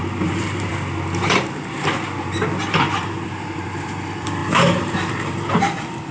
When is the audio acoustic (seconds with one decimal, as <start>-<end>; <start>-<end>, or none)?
0.7-2.7